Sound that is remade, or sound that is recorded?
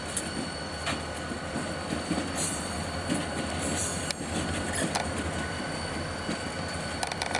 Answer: recorded